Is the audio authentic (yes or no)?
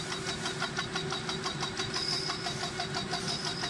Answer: yes